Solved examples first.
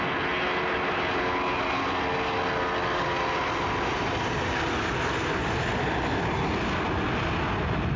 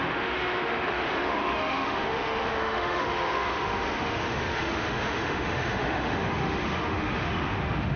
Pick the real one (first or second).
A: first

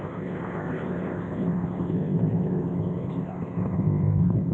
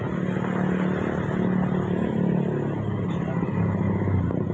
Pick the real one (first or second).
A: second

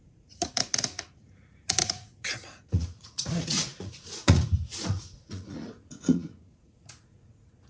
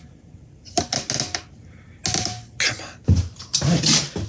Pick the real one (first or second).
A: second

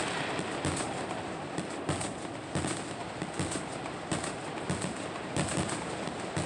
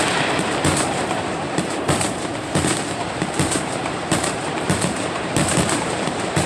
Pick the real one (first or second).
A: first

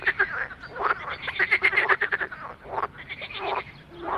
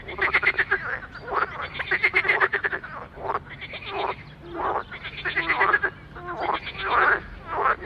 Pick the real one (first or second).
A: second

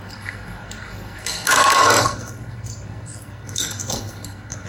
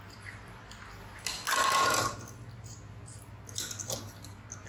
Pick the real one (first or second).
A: second